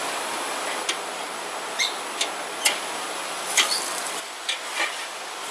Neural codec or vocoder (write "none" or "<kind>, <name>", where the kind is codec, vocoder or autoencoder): vocoder, BigVGAN v2